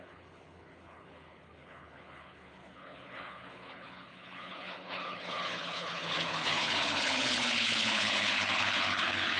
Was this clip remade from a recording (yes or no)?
yes